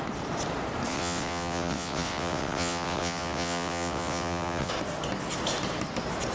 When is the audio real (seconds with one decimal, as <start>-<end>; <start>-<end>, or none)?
0.0-0.9; 4.7-6.3